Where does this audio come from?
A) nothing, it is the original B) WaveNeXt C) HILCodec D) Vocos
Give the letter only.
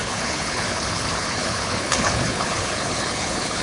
C